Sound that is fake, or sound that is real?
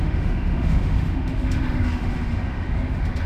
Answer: fake